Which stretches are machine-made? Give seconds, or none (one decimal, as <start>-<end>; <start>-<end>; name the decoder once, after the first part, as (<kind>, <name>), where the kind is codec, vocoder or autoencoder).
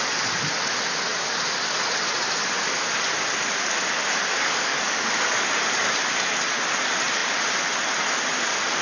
4.2-5.4 (codec, DAC)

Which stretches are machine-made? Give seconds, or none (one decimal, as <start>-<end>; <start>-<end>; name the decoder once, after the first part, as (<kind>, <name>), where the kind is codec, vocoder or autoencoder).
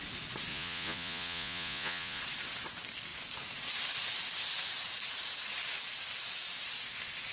0.5-2.2 (vocoder, Vocos)